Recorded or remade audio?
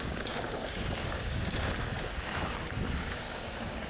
remade